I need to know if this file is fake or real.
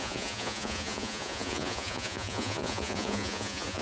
fake